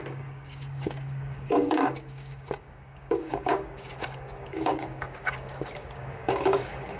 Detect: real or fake fake